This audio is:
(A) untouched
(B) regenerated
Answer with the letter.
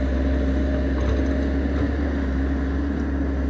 A